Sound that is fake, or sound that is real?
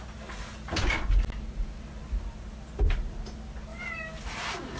real